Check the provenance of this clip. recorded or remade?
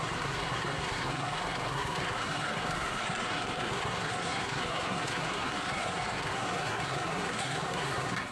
remade